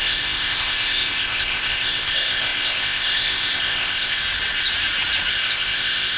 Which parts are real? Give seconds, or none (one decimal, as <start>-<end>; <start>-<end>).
4.2-5.3